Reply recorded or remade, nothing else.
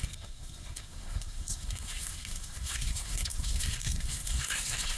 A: remade